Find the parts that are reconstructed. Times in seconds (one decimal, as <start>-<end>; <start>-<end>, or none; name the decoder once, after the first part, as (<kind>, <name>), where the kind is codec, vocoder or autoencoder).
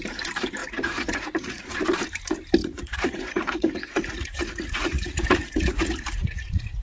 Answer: 0.6-1.7 (vocoder, Vocos); 2.6-6.8